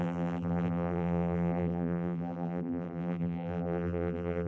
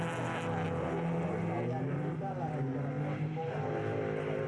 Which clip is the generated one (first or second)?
first